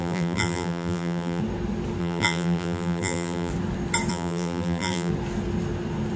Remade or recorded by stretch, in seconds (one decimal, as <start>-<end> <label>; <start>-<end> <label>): 0.0-1.4 remade; 1.4-2.0 recorded; 2.0-3.5 remade; 3.5-4.1 recorded; 4.1-5.1 remade; 5.1-6.2 recorded